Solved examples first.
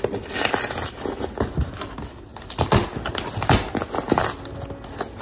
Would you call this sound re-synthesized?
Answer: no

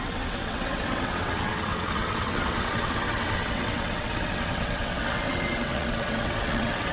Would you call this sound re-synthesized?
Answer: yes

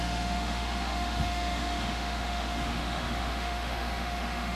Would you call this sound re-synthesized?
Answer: yes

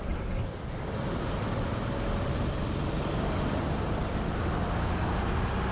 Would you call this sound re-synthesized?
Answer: no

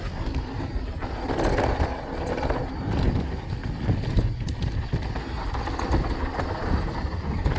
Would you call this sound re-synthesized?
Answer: no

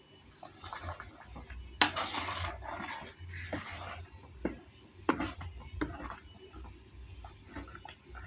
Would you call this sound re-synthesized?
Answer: no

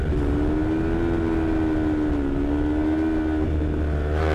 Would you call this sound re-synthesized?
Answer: no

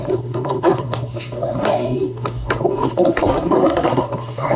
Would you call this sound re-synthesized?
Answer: yes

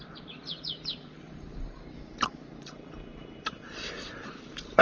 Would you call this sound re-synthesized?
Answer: yes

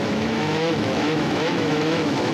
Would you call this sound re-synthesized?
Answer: yes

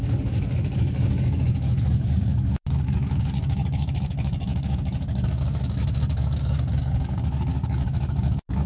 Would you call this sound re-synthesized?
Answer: yes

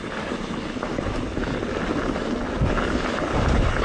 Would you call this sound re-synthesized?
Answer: no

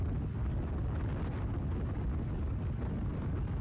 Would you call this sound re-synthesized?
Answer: no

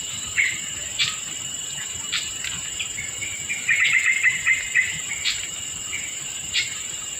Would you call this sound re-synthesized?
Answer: yes